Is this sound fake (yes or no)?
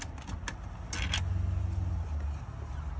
no